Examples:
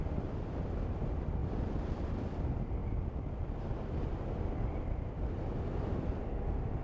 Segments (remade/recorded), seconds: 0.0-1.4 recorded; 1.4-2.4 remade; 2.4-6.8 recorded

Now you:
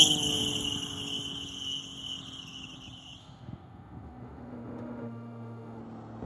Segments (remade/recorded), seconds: 0.0-3.2 recorded; 3.2-5.8 remade; 5.8-6.3 recorded

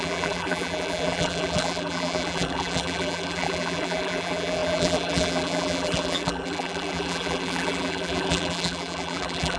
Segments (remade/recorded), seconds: 0.0-9.6 remade

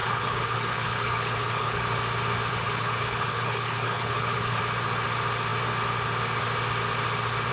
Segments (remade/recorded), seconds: 0.0-1.8 remade; 1.8-2.5 recorded; 2.5-4.6 remade; 4.6-7.5 recorded

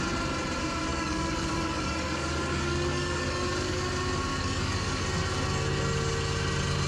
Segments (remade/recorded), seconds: 0.0-0.9 recorded; 0.9-3.9 remade; 3.9-4.3 recorded; 4.3-5.0 remade; 5.0-6.9 recorded